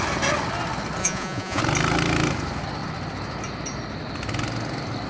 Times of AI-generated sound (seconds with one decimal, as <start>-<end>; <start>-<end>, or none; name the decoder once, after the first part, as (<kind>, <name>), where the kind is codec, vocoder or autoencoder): 1.0-1.6 (vocoder, Vocos)